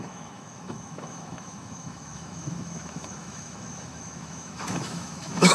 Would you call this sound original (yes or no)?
no